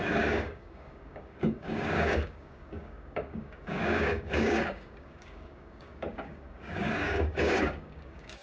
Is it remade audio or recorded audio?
remade